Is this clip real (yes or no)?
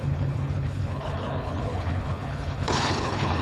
no